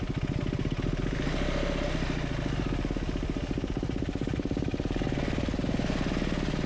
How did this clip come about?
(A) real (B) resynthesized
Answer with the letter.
A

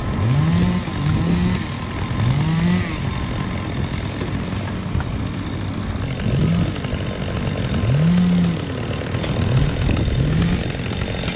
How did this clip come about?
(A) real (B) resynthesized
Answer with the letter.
A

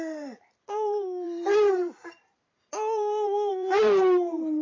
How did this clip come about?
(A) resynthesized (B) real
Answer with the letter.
A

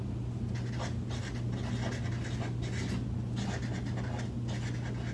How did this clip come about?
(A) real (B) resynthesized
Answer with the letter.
A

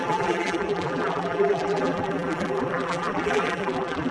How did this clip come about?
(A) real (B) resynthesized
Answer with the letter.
B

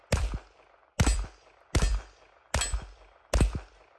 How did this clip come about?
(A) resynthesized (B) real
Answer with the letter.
B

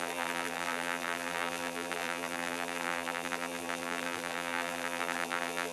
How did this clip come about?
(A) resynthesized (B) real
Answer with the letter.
A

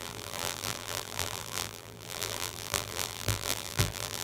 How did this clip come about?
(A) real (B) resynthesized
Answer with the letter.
B